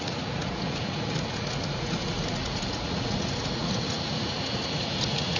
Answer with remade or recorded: remade